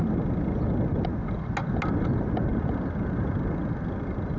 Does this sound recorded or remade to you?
recorded